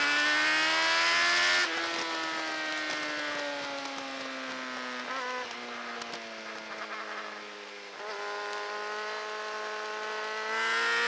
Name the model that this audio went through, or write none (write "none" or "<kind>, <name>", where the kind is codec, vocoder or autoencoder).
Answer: none